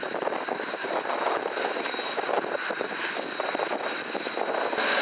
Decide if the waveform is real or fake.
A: real